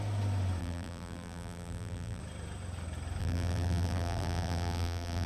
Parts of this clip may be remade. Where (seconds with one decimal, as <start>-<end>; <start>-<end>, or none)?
0.6-2.2; 3.2-5.3